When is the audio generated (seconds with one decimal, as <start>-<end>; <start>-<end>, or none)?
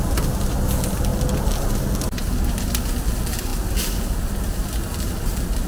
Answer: none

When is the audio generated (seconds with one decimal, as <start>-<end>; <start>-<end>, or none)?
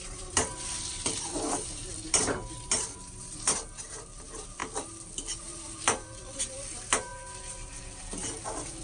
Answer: 0.0-8.8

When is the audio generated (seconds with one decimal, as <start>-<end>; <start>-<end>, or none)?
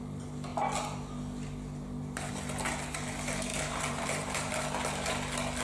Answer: 3.5-4.5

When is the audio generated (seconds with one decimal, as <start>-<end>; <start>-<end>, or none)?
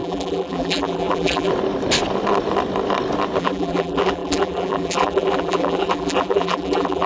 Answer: 0.0-1.5; 3.4-7.1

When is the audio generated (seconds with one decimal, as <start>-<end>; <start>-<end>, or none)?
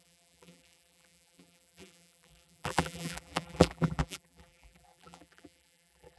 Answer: 0.0-6.2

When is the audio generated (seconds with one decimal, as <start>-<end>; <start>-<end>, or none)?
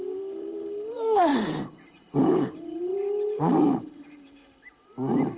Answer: 0.0-1.3; 1.9-4.4